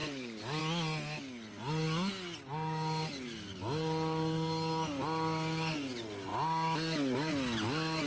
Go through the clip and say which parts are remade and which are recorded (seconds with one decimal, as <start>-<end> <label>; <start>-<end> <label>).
0.0-0.6 remade; 0.6-8.1 recorded

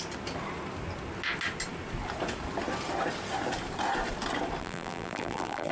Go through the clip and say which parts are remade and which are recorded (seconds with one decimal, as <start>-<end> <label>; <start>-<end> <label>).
0.0-4.6 recorded; 4.6-5.7 remade

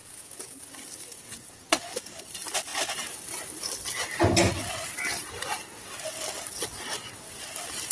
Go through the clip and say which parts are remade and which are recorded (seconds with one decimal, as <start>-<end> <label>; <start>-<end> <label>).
0.0-0.6 remade; 0.6-1.1 recorded; 1.1-1.7 remade; 1.7-7.9 recorded